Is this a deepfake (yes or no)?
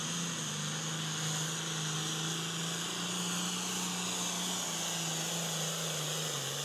no